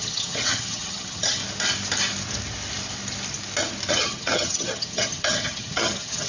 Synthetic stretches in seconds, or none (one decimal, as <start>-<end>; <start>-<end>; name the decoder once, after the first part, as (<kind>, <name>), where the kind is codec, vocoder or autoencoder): 0.0-1.4 (vocoder, HiFi-GAN); 3.9-6.3